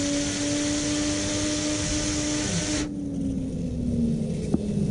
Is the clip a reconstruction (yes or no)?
no